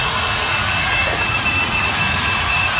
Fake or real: fake